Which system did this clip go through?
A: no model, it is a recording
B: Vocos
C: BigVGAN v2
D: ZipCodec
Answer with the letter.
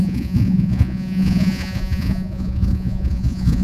B